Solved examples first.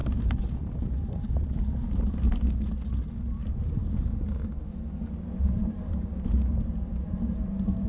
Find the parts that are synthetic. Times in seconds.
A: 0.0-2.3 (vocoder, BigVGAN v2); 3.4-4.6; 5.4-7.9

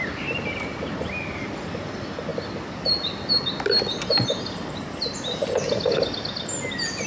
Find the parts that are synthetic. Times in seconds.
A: none

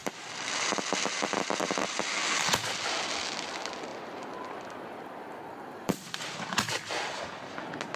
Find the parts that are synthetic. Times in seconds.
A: 0.0-0.7 (vocoder, BigVGAN v2); 3.9-6.3

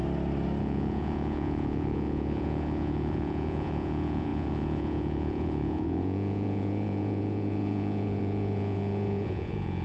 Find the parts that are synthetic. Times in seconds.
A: 0.6-9.8 (vocoder, Vocos)

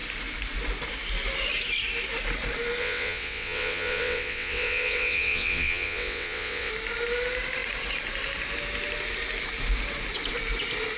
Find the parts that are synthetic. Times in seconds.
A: 2.8-6.7 (vocoder, WaveNeXt)

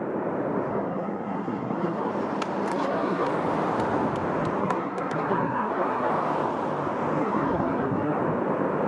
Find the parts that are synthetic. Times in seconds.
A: 0.7-2.1 (codec, SNAC); 2.7-3.3; 4.6-6.1; 7.2-8.2

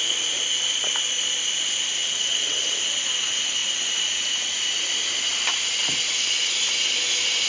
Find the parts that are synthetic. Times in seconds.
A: 2.0-2.8 (vocoder, WaveNeXt)

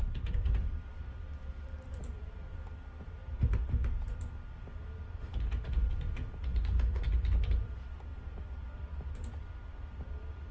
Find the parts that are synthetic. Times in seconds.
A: 0.0-3.2 (vocoder, BigVGAN v2); 4.6-10.5